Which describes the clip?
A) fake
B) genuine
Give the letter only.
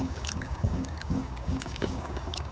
A